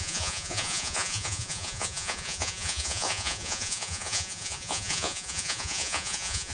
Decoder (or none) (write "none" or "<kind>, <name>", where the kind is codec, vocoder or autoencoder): vocoder, Vocos